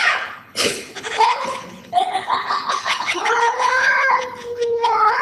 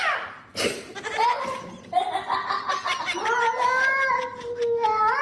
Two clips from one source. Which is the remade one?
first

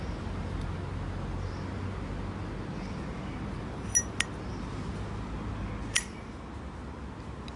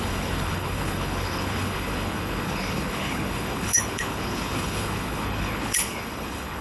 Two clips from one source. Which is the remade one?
second